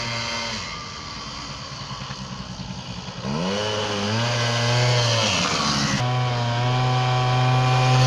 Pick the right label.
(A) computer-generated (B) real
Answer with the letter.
B